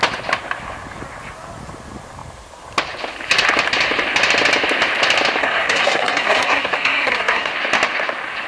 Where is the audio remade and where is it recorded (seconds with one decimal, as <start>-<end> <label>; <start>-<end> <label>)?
0.0-5.4 recorded; 5.4-7.5 remade; 7.5-8.5 recorded